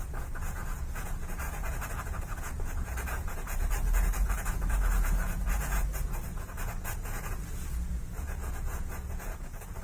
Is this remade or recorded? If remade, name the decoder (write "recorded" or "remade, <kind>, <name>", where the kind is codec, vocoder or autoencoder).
remade, vocoder, Vocos